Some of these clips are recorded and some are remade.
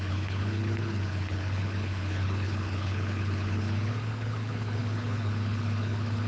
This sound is remade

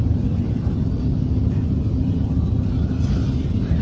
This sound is recorded